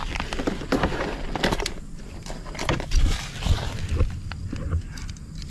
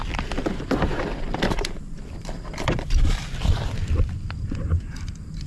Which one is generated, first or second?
second